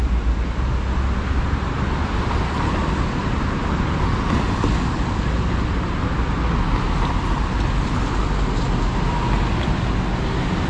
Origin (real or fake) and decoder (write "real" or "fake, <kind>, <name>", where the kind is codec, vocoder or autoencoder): real